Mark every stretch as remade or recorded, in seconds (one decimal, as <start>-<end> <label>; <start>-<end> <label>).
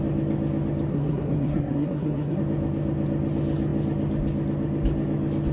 0.0-0.9 recorded; 0.9-2.4 remade; 2.4-5.5 recorded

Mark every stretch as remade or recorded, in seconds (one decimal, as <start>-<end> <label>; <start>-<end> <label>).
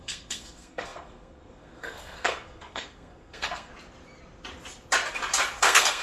0.0-3.7 remade; 3.7-5.6 recorded; 5.6-6.0 remade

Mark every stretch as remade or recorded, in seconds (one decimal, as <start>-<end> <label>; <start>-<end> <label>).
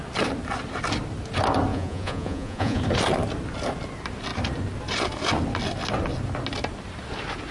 0.0-1.7 recorded; 1.7-2.8 remade; 2.8-7.5 recorded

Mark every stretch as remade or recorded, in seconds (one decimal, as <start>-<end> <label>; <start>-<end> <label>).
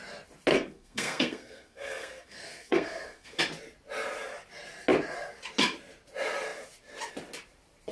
0.0-0.5 recorded; 0.5-3.4 remade; 3.4-7.9 recorded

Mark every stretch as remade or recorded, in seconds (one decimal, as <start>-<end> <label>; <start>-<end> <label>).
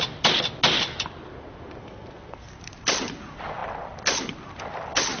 0.0-1.8 recorded; 1.8-2.5 remade; 2.5-5.2 recorded